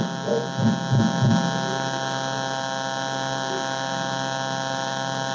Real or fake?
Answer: real